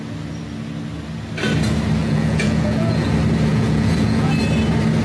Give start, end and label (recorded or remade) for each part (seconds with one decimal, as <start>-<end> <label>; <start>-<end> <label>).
0.0-2.0 recorded; 2.0-3.1 remade; 3.1-3.5 recorded; 3.5-4.3 remade; 4.3-5.0 recorded